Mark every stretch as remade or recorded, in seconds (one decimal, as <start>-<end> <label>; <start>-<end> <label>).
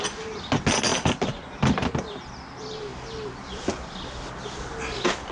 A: 0.0-5.3 recorded